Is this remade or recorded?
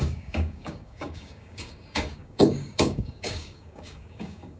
remade